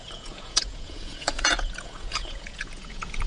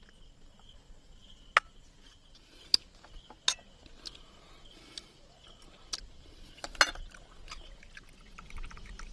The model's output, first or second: first